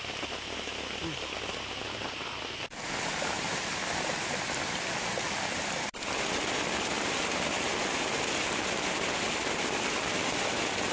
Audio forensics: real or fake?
real